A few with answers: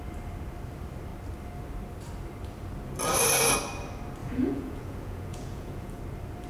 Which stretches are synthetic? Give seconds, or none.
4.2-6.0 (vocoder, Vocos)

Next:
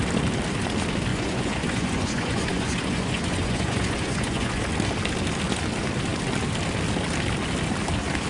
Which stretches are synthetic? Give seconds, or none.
1.1-4.6 (vocoder, Vocos)

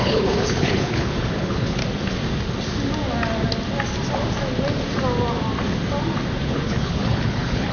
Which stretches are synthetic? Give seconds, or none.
0.0-1.8 (codec, HILCodec); 6.4-7.7

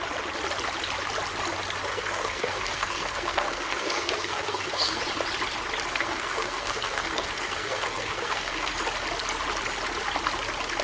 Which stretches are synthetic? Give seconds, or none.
1.9-5.0 (codec, SNAC); 5.9-8.7

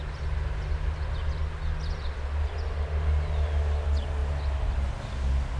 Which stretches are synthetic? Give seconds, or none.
none

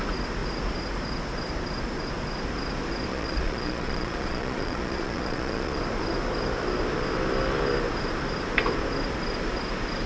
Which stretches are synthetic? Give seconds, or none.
3.1-5.8 (vocoder, Vocos)